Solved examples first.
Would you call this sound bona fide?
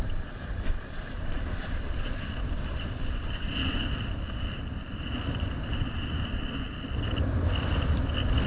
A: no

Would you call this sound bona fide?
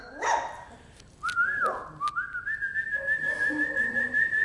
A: yes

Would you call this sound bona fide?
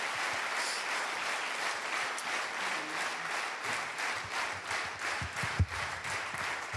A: no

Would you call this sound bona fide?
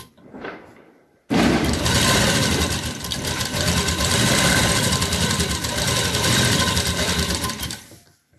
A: no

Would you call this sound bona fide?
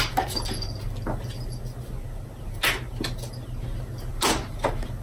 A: yes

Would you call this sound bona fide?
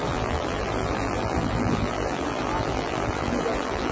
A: no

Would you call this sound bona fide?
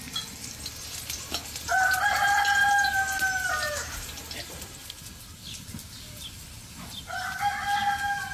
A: yes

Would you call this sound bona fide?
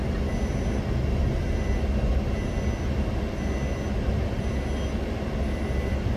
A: yes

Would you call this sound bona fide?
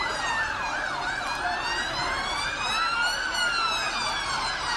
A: yes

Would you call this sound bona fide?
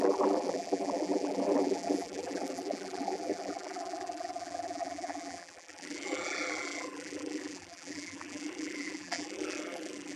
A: no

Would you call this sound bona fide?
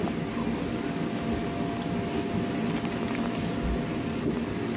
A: yes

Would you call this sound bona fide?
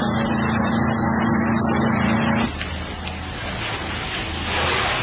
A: yes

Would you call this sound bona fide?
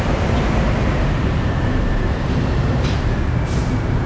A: no